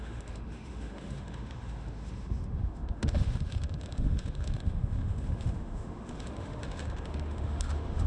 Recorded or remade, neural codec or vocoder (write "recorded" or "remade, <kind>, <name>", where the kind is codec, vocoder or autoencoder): remade, autoencoder, DAC-VAE